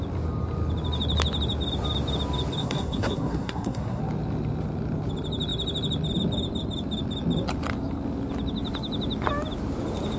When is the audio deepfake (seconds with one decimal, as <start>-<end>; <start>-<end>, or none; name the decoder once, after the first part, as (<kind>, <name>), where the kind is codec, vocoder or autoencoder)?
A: 2.6-4.0 (codec, SNAC)